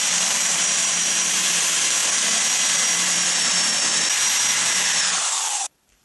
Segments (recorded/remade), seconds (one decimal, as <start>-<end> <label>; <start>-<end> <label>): 0.0-2.0 remade; 2.0-4.5 recorded; 4.5-6.0 remade